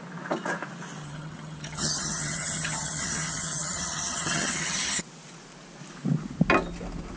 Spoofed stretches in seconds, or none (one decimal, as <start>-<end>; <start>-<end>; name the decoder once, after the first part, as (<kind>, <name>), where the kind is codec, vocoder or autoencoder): 1.0-5.0 (vocoder, HiFi-GAN)